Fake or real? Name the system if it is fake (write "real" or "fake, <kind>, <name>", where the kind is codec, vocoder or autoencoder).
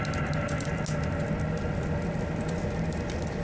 real